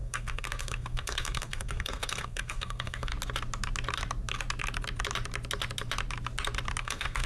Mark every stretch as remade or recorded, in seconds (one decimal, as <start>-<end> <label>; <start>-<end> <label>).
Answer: 0.0-3.1 remade; 3.1-6.8 recorded; 6.8-7.3 remade